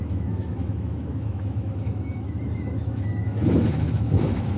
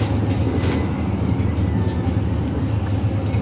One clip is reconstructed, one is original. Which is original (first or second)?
second